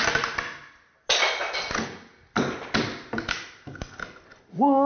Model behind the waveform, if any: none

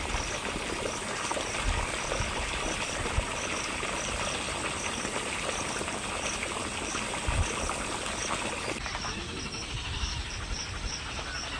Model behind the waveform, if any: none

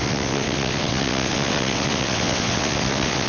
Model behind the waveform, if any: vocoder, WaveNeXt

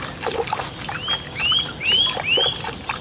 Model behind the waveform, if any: none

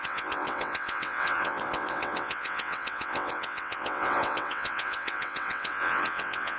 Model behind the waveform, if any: vocoder, WaveNeXt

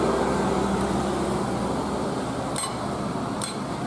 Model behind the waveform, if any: none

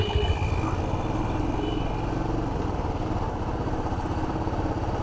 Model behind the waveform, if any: none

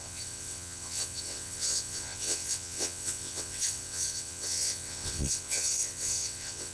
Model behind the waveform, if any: vocoder, WaveNeXt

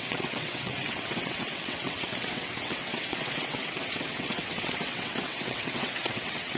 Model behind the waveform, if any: vocoder, WaveNeXt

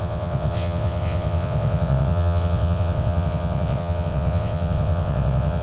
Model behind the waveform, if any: vocoder, WaveNeXt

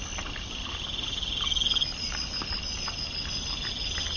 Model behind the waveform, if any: none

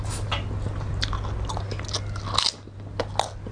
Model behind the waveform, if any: none